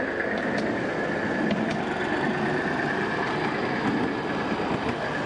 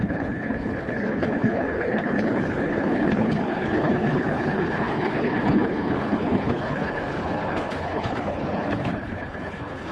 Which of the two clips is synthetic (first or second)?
second